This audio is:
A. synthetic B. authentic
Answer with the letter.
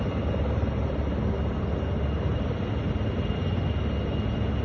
B